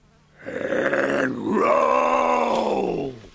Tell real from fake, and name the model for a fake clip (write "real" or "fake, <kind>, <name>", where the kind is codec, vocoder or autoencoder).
real